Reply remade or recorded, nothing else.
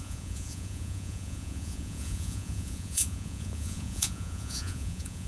remade